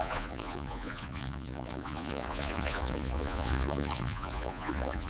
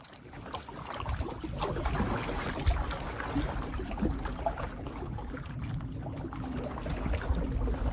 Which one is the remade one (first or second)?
first